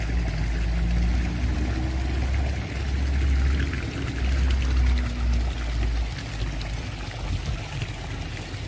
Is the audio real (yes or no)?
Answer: yes